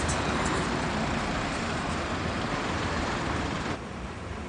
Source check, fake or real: fake